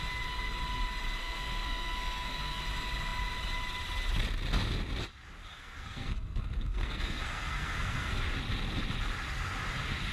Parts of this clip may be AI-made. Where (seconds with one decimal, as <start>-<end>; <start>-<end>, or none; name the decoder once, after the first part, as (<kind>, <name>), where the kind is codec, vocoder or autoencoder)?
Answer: 1.2-2.6 (codec, SNAC); 5.4-8.2

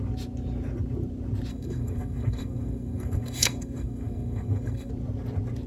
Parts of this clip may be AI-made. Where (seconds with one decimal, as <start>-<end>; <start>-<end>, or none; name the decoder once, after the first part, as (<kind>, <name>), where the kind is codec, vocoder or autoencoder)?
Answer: 1.5-4.9 (codec, SNAC)

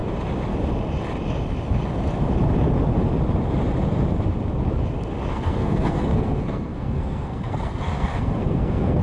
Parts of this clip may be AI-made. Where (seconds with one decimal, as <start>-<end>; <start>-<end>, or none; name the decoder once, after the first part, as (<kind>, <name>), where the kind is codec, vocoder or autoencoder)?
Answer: 5.3-9.0 (codec, SNAC)

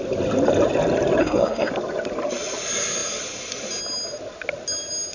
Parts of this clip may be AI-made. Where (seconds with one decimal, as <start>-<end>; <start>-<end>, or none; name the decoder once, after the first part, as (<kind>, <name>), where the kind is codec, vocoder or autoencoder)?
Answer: 1.2-1.7 (codec, SNAC)

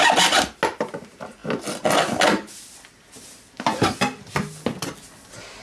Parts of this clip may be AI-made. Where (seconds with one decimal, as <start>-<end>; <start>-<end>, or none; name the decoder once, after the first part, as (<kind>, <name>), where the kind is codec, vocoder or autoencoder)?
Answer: none

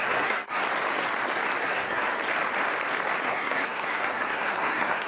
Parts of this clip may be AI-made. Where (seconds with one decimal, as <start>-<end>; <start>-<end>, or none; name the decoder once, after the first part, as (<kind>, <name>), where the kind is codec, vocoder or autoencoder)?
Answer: 0.0-0.6 (codec, SNAC); 1.6-2.2; 3.2-5.1

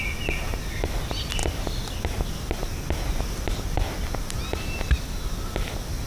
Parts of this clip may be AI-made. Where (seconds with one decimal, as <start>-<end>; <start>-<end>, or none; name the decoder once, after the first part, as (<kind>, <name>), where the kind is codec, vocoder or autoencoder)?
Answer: none